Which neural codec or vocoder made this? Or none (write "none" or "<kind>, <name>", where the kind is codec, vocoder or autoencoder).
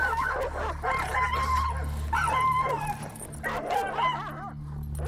none